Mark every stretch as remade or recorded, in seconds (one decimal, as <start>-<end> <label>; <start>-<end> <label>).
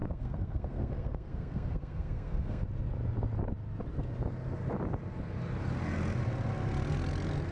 0.0-2.6 remade; 2.6-7.5 recorded